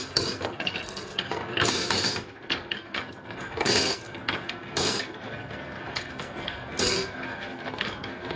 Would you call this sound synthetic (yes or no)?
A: yes